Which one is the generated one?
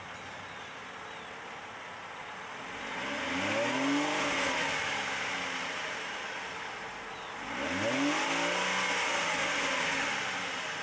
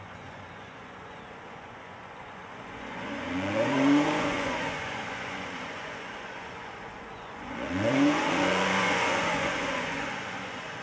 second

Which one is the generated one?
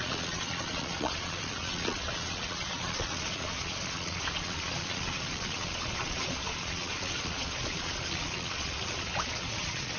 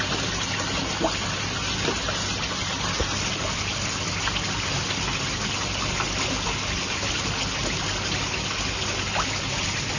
first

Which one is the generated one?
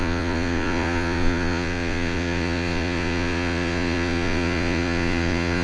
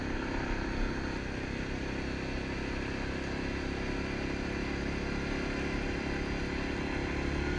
first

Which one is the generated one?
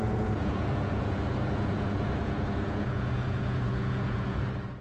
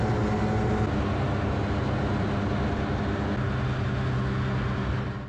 first